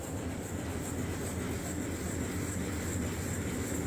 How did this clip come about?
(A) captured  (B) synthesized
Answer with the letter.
A